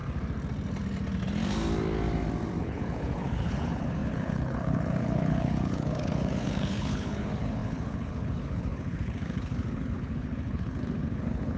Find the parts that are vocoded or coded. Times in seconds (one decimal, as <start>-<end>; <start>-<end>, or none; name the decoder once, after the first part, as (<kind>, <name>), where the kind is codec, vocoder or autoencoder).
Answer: 2.6-11.6 (codec, HILCodec)